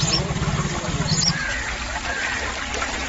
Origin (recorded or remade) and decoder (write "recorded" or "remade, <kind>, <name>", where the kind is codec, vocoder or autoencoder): recorded